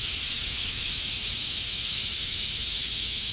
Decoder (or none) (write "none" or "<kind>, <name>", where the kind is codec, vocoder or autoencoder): autoencoder, DAC-VAE